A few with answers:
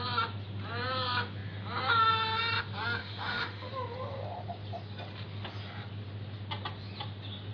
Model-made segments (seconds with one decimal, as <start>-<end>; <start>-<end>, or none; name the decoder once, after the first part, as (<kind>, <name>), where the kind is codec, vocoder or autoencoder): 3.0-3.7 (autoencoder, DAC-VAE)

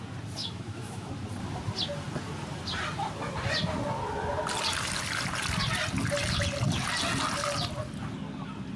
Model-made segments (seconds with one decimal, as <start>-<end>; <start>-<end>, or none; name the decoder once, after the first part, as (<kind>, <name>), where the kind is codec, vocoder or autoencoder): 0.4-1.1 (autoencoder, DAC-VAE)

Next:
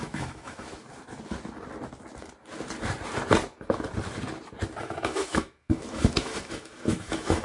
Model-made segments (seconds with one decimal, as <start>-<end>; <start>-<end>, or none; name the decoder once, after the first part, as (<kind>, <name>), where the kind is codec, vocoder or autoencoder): 0.0-0.7 (autoencoder, DAC-VAE); 4.8-7.4

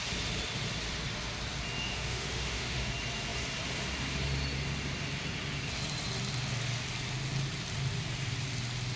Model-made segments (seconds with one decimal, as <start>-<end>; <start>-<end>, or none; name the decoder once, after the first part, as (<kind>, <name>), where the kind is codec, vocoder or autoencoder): 1.8-2.9 (autoencoder, DAC-VAE)

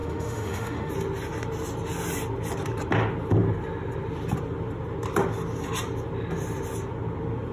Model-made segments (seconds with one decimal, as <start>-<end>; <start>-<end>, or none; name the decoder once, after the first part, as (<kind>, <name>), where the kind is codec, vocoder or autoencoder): 0.0-0.9 (autoencoder, DAC-VAE)

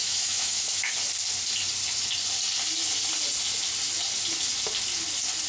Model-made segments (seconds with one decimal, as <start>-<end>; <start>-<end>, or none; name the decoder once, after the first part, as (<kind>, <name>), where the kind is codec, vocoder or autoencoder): 0.0-0.9 (autoencoder, DAC-VAE)